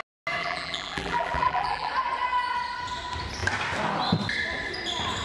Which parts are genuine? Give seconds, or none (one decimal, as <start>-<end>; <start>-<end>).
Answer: 0.0-0.4; 1.9-5.2